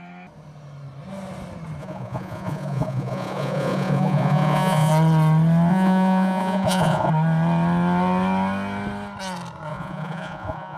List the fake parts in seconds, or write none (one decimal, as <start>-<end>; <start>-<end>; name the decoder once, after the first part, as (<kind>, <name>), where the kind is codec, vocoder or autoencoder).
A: 1.8-4.9 (vocoder, Vocos); 5.7-7.1; 9.7-10.8